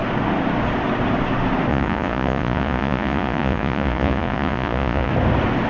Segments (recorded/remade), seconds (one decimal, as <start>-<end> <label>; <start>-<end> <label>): 0.0-1.7 recorded; 1.7-5.1 remade; 5.1-5.7 recorded